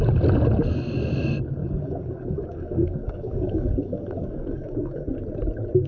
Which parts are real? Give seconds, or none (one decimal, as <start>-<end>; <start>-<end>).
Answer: 0.0-1.6; 5.1-5.9